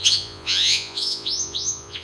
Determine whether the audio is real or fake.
fake